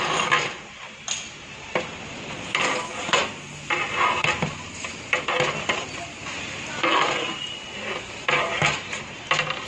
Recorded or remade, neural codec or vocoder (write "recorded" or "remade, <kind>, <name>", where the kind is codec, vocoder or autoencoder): recorded